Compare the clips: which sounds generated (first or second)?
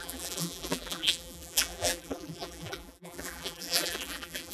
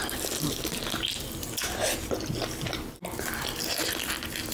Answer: first